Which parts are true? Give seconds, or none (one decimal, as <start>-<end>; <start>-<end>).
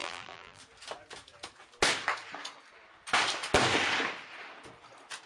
0.6-5.3